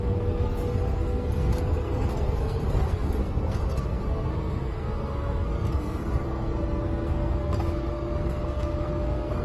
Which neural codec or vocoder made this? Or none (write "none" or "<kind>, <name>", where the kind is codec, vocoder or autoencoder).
codec, SNAC